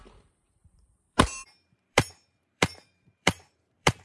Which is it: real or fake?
fake